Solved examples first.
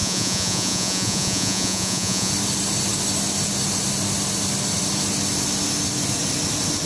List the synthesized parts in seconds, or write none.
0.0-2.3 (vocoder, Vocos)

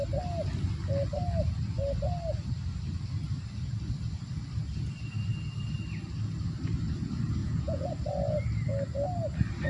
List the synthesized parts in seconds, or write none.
7.4-7.9 (vocoder, Vocos)

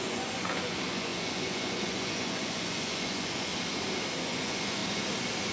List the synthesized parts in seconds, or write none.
0.0-3.5 (vocoder, Vocos); 4.2-4.8

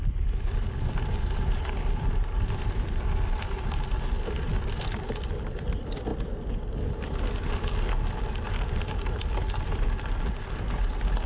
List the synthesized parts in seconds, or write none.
none

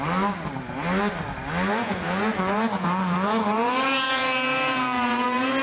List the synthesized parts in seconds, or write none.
1.8-5.6 (vocoder, Vocos)

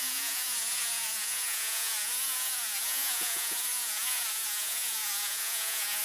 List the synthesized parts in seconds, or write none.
0.0-6.0 (vocoder, Vocos)

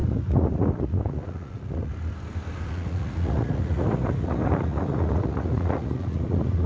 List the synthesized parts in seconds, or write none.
0.0-1.9 (vocoder, Vocos); 2.7-6.7